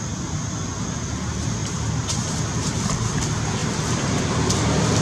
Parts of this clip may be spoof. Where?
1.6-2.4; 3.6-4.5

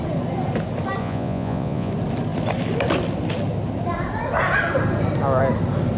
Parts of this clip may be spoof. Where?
1.0-1.9

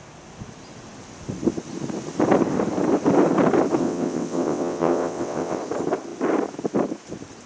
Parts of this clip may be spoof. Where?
3.8-5.6